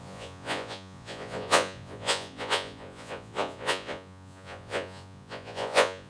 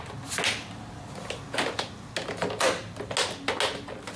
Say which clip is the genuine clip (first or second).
second